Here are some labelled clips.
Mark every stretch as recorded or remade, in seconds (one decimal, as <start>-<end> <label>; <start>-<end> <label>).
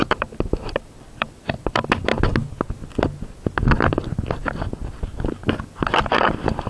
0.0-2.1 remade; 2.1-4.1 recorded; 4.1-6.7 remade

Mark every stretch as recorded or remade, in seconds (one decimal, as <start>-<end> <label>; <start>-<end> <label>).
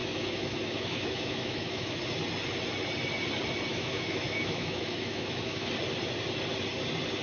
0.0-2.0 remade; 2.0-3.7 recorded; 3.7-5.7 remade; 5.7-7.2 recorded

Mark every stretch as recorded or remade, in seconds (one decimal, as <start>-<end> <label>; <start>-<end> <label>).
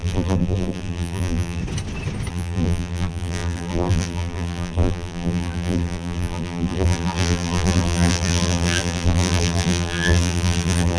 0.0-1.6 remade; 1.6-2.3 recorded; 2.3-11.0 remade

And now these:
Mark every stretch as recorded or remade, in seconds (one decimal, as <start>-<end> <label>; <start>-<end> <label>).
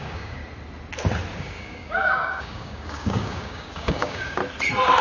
0.0-0.4 remade; 0.4-1.4 recorded; 1.4-4.4 remade; 4.4-5.0 recorded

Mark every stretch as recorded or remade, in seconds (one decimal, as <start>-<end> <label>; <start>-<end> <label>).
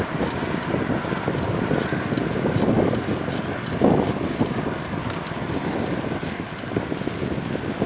0.0-7.9 recorded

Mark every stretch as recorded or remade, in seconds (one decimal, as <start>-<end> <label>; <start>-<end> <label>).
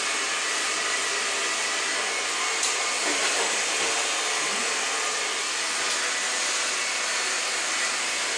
0.0-8.4 recorded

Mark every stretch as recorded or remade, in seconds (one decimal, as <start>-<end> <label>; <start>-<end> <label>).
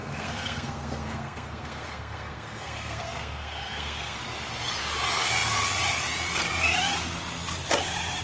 0.0-4.2 remade; 4.2-8.2 recorded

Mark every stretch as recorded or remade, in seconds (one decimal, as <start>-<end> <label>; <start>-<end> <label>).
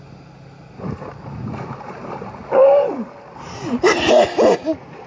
0.0-5.1 recorded